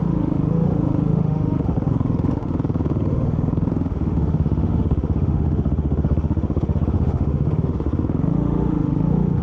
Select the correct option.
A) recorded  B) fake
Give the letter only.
B